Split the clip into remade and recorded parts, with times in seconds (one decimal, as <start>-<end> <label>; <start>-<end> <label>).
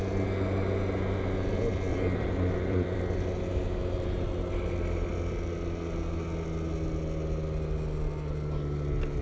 0.0-1.9 recorded; 1.9-3.0 remade; 3.0-9.2 recorded